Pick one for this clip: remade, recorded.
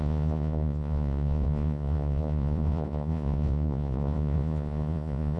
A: remade